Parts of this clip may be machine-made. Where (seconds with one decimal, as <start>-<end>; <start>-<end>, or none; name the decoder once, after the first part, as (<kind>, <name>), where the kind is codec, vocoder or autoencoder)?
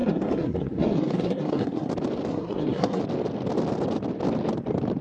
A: 0.0-1.9 (codec, SNAC); 2.3-3.0